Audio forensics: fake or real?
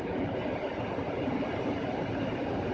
real